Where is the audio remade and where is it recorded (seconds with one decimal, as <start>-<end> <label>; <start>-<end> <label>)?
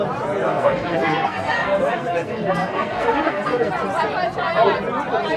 0.0-0.5 recorded; 0.5-3.7 remade; 3.7-5.4 recorded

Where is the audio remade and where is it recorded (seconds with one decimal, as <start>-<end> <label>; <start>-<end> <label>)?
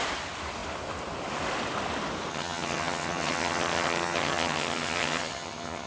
0.0-2.3 recorded; 2.3-5.9 remade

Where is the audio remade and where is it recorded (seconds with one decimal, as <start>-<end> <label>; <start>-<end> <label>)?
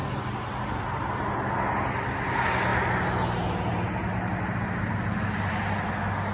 0.0-6.3 recorded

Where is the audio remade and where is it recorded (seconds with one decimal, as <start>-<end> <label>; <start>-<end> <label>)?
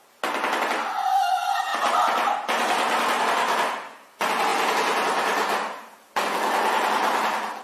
0.0-7.6 recorded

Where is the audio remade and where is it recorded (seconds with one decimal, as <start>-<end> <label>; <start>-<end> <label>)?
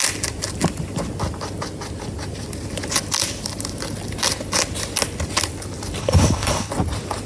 0.0-6.0 recorded; 6.0-6.7 remade; 6.7-7.3 recorded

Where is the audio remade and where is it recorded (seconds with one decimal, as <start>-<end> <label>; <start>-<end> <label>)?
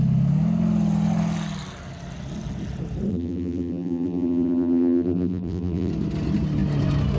0.0-3.1 recorded; 3.1-5.9 remade; 5.9-7.2 recorded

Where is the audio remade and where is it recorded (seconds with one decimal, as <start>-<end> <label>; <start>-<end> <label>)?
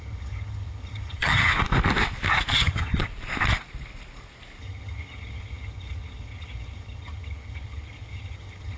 0.0-1.5 remade; 1.5-2.5 recorded; 2.5-3.1 remade; 3.1-4.6 recorded; 4.6-8.8 remade